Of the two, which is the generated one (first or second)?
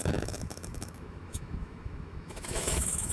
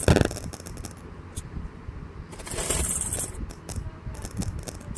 first